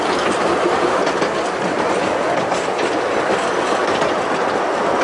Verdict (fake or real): real